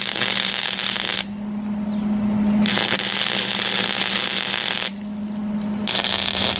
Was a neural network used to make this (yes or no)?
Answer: no